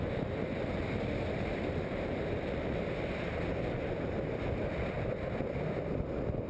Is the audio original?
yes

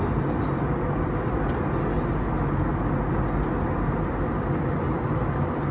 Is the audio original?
yes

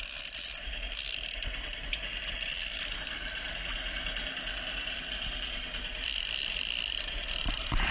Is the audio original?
yes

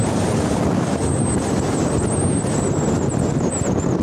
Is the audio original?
yes